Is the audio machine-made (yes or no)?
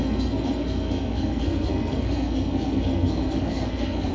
yes